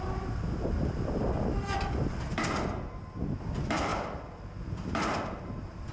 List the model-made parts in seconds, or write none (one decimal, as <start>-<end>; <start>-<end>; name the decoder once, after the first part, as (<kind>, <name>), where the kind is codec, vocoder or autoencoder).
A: none